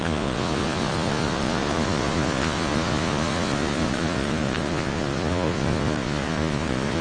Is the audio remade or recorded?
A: remade